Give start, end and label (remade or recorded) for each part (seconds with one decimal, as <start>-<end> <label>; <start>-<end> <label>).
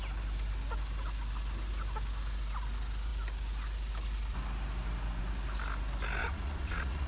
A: 0.0-6.2 recorded; 6.2-7.1 remade